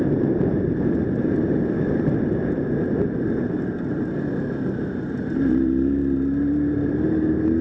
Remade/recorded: recorded